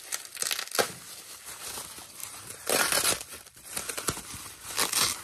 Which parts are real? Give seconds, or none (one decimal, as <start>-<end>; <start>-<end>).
0.0-2.2; 3.5-5.2